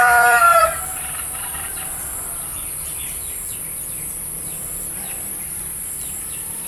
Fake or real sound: fake